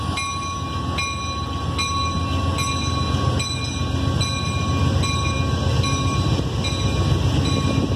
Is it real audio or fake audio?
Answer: real